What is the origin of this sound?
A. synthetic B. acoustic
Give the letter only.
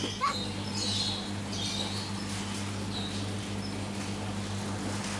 B